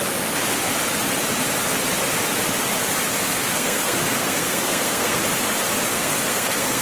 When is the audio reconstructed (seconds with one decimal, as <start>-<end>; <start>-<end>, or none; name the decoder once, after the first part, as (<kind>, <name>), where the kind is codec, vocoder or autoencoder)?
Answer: 3.1-5.2 (codec, SNAC); 5.9-6.8